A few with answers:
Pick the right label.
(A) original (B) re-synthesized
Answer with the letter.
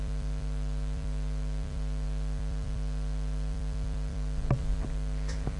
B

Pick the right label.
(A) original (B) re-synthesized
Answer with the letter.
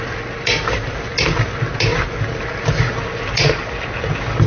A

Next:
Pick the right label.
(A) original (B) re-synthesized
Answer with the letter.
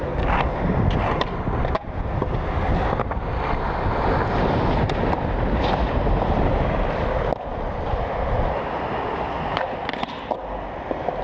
A